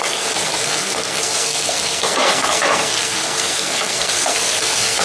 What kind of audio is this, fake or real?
fake